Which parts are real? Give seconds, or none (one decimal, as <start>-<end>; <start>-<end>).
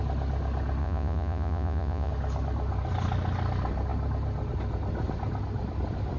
0.0-0.8; 2.1-6.2